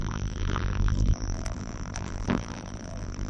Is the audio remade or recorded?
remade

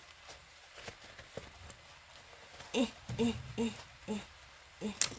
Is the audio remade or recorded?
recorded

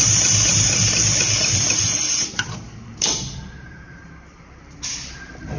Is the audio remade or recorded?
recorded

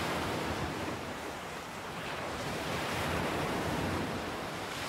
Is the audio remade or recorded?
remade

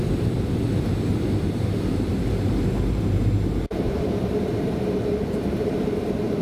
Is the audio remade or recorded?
remade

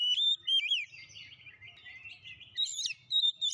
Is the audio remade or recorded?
remade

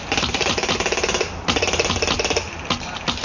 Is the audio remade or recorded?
recorded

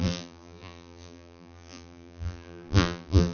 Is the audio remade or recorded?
remade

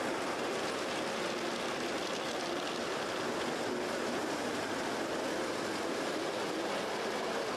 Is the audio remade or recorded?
recorded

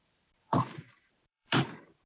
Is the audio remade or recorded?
remade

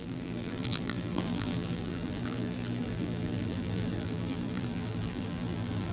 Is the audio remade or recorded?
remade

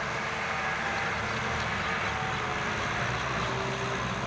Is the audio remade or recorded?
recorded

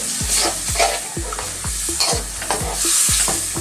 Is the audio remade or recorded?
recorded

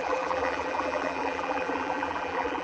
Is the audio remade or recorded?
remade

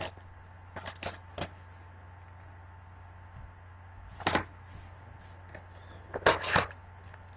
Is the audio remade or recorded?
recorded